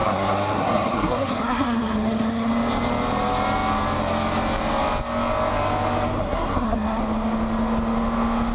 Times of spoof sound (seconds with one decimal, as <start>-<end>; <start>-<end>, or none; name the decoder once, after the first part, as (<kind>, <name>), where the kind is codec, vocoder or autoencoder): 0.0-2.5 (codec, SNAC); 6.2-7.0